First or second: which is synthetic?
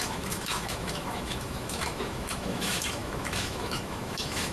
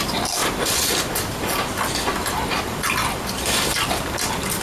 first